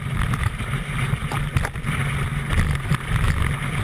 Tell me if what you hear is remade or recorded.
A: recorded